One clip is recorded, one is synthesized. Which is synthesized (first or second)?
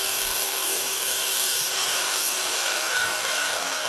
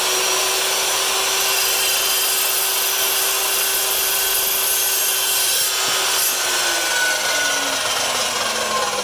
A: first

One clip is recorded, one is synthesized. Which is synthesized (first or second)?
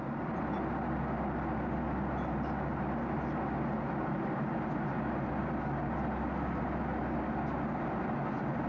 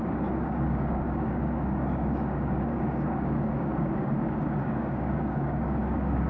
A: second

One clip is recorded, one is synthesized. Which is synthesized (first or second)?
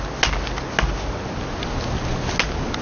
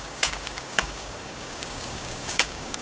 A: second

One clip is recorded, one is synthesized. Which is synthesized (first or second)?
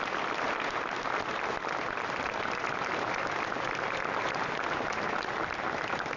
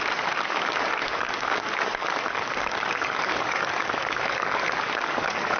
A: second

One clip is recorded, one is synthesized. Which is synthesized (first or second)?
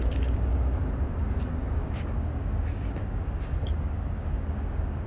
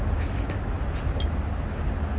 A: first